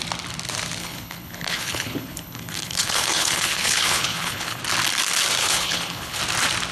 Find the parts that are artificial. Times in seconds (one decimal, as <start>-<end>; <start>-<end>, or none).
0.8-4.6; 5.4-6.2